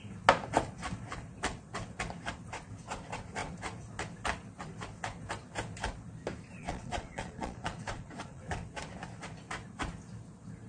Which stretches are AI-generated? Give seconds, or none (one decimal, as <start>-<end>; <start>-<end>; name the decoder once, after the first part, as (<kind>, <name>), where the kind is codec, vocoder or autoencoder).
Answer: 6.6-8.4 (vocoder, Vocos)